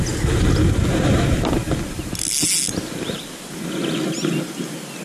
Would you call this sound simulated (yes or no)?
no